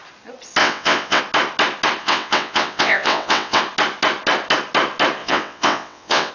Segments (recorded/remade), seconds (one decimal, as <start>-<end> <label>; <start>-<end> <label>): 0.0-0.6 recorded; 0.6-1.2 remade; 1.2-2.0 recorded; 2.0-3.6 remade; 3.6-5.2 recorded; 5.2-6.3 remade